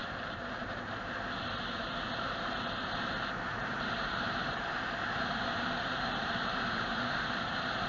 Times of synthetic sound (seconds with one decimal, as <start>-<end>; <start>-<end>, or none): 0.0-7.9